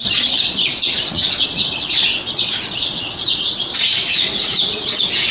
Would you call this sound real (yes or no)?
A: no